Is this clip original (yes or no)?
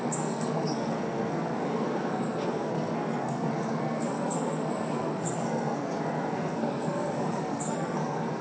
no